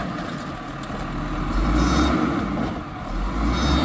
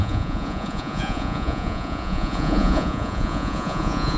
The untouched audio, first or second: first